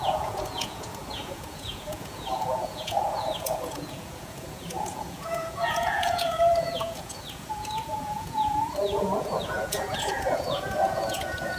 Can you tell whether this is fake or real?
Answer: fake